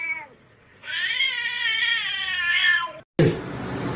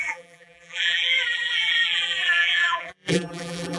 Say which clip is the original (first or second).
first